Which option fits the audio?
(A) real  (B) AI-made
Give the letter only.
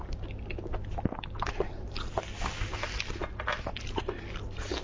A